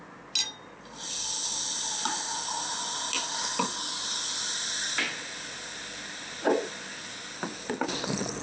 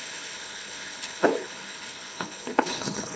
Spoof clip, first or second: second